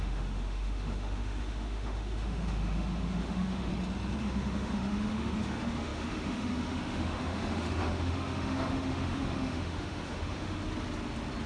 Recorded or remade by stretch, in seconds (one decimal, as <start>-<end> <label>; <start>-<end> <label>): 0.0-3.7 remade; 3.7-4.2 recorded; 4.2-10.6 remade; 10.6-11.5 recorded